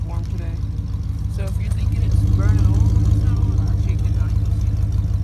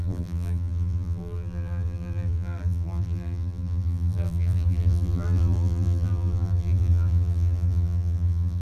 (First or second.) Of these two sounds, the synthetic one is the second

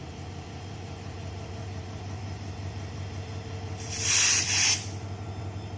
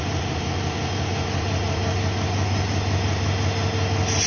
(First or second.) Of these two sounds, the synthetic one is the first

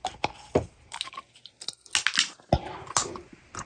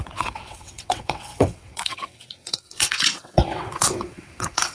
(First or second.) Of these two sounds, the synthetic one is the second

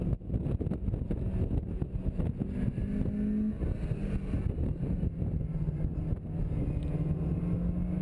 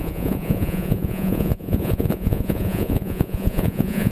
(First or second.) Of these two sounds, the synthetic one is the second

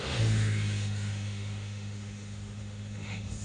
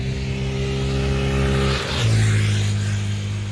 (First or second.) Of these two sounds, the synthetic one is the first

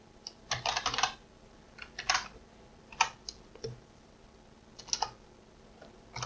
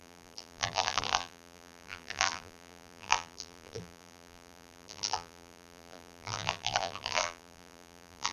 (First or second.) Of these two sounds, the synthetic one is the second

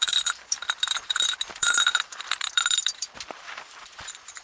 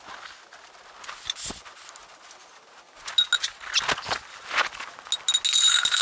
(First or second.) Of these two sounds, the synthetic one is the first